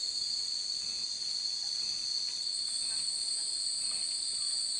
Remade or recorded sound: remade